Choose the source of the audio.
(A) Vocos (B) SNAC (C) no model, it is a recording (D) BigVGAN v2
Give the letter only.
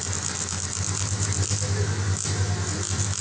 C